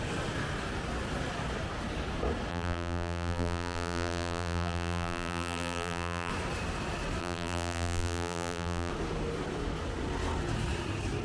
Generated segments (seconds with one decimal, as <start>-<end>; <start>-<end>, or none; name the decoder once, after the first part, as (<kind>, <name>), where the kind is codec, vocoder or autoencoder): 2.5-6.3 (vocoder, BigVGAN v2); 7.2-8.9